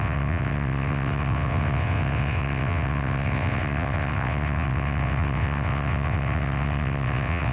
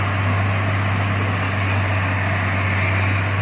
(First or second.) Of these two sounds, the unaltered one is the second